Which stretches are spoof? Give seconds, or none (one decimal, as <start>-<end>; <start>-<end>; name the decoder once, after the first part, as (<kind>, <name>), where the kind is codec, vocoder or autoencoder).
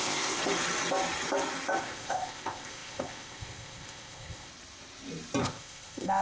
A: 0.0-0.4 (codec, ZipCodec); 1.8-4.5; 5.4-6.2